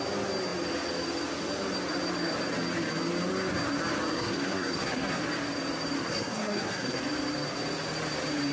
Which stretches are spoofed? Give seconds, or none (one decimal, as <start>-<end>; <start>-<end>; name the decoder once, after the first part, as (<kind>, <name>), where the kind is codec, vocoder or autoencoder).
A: 4.1-5.2 (codec, SNAC); 6.0-7.0